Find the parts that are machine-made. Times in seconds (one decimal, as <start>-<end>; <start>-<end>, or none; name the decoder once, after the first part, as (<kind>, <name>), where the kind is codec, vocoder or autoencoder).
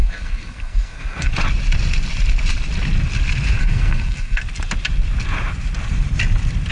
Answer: 0.0-1.3 (codec, SNAC); 3.6-4.4